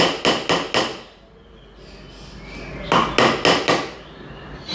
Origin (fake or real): real